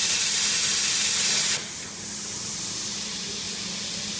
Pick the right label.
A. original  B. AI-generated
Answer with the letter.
A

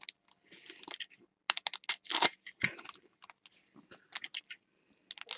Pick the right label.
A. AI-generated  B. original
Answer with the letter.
B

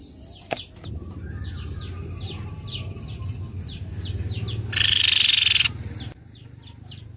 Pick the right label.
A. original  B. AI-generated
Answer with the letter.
A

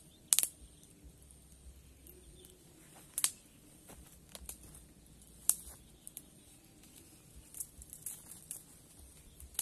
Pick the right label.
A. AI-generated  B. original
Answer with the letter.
B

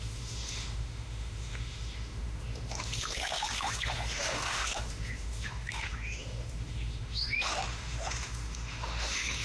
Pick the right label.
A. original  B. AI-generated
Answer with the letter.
B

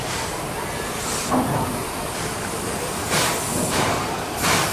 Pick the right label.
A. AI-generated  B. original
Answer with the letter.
B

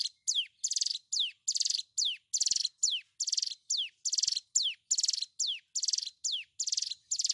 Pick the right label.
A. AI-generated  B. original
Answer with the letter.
B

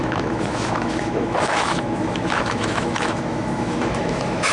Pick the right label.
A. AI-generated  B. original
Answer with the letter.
A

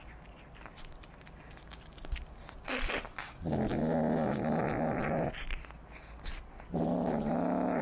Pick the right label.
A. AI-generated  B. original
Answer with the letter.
B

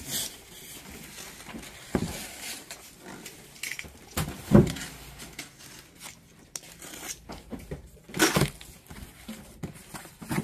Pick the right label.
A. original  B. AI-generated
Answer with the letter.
A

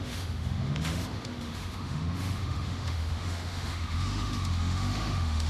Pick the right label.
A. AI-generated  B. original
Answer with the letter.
A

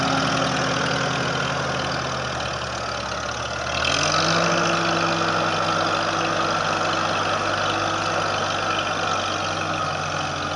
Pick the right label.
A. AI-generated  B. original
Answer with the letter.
B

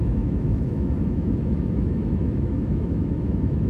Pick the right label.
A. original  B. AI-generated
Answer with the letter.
B